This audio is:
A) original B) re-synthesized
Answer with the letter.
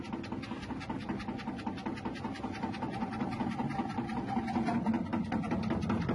A